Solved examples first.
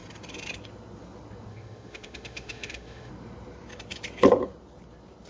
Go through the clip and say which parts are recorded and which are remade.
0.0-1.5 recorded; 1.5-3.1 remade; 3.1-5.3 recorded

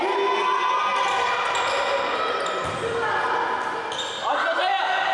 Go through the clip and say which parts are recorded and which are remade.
0.0-5.1 recorded

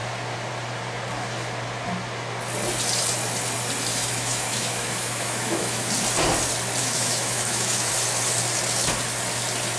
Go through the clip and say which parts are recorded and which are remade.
0.0-3.9 recorded; 3.9-5.9 remade; 5.9-6.8 recorded; 6.8-7.9 remade; 7.9-9.8 recorded

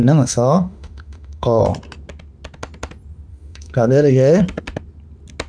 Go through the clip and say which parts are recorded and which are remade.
0.0-1.6 remade; 1.6-3.3 recorded; 3.3-4.4 remade; 4.4-5.5 recorded

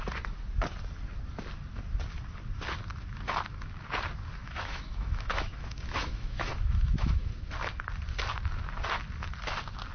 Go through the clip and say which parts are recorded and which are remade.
0.0-4.4 recorded; 4.4-7.3 remade; 7.3-9.9 recorded

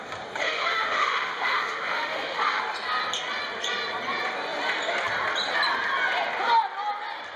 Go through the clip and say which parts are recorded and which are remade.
0.0-0.4 recorded; 0.4-2.6 remade; 2.6-7.4 recorded